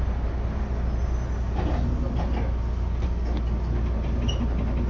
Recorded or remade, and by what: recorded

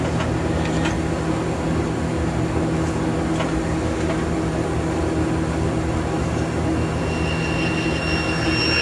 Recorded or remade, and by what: recorded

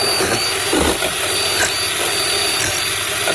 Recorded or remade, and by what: recorded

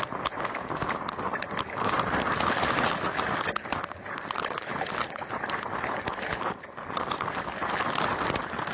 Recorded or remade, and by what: recorded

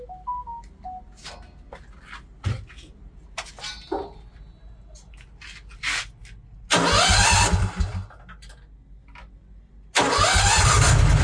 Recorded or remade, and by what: recorded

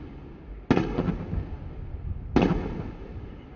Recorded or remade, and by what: recorded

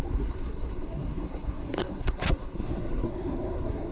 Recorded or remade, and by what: remade, codec, SNAC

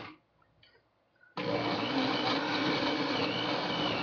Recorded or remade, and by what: recorded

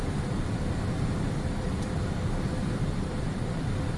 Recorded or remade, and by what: remade, vocoder, BigVGAN v2